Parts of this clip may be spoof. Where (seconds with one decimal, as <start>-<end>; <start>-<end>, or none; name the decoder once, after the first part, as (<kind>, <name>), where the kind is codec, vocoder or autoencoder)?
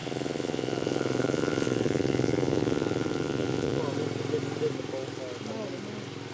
0.0-3.8 (vocoder, Vocos)